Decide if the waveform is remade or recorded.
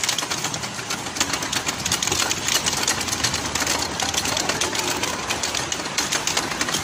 recorded